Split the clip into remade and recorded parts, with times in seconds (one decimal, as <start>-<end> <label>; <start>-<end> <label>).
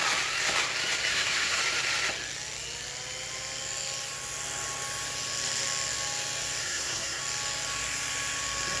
0.0-1.1 recorded; 1.1-1.6 remade; 1.6-6.6 recorded; 6.6-7.2 remade; 7.2-8.8 recorded